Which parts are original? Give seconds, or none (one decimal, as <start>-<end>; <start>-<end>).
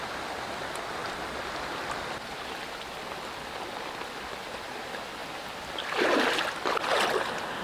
0.0-7.6